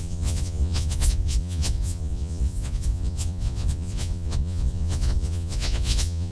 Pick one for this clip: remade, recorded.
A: remade